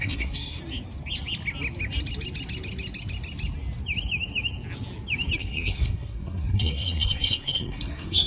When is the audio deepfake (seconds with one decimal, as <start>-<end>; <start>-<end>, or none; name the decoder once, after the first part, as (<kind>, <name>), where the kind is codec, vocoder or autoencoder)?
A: 0.0-0.6 (codec, SNAC); 5.4-8.3